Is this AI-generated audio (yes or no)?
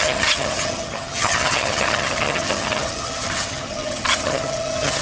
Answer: yes